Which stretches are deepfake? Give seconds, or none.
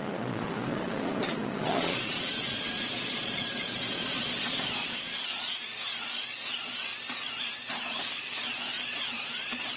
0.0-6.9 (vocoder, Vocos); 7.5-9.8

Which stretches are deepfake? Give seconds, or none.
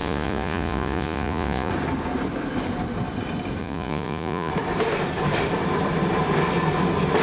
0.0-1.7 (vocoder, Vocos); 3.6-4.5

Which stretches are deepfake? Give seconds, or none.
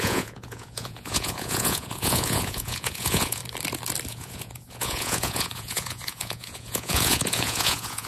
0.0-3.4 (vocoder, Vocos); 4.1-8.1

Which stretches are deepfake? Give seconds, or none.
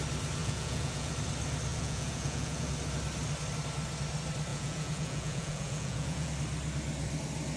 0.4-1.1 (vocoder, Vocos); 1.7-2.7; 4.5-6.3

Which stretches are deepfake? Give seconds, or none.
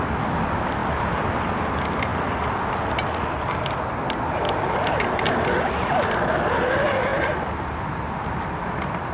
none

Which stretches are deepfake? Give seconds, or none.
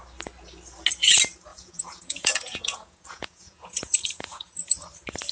1.5-4.7 (vocoder, Vocos)